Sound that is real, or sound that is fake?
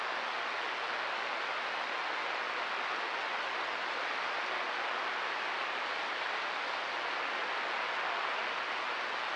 real